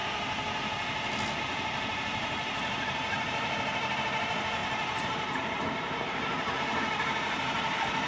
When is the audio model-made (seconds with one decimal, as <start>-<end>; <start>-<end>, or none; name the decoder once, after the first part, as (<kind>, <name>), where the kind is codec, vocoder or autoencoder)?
1.4-8.1 (vocoder, BigVGAN v2)